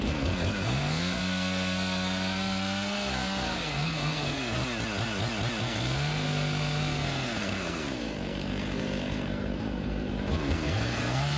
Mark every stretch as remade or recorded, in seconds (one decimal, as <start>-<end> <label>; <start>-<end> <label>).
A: 0.0-4.6 remade; 4.6-5.6 recorded; 5.6-11.4 remade